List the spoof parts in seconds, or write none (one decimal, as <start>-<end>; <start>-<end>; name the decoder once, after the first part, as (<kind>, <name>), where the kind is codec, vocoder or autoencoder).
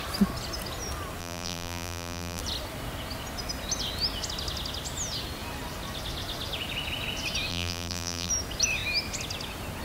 1.2-2.4 (vocoder, BigVGAN v2); 7.5-8.3